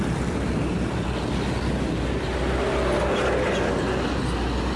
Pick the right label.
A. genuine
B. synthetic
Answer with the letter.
A